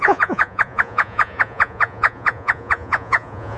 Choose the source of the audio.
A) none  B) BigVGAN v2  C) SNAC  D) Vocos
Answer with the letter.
D